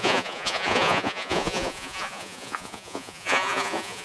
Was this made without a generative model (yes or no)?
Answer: no